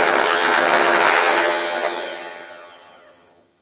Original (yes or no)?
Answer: no